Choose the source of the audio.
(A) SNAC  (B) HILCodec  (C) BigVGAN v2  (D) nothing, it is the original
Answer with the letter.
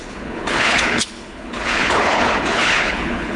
B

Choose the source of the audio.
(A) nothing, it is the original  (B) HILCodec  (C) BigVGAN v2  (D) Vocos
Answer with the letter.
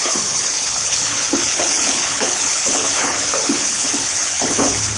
B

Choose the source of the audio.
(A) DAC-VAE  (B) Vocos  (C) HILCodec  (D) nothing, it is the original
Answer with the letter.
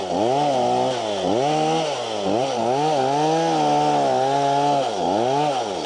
D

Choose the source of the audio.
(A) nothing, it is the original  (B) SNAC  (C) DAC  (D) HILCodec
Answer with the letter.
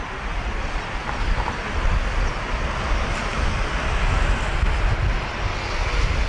A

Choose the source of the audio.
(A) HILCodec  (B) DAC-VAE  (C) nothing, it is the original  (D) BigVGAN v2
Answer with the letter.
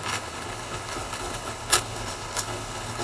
A